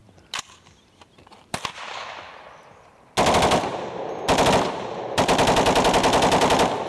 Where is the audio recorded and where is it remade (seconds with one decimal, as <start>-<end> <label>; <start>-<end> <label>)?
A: 0.0-2.6 remade; 2.6-6.9 recorded